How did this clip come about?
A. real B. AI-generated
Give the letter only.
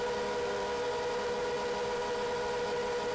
A